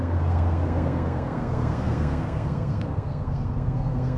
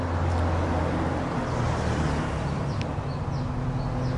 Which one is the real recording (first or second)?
second